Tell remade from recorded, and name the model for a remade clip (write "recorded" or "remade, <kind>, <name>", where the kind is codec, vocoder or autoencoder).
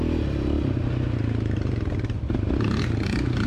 recorded